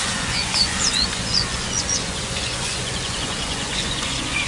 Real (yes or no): no